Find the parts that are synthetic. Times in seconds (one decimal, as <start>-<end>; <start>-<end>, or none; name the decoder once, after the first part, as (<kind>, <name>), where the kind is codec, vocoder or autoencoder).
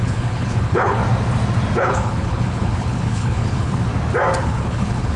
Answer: 0.0-1.0 (codec, HILCodec); 1.8-3.9; 4.4-5.2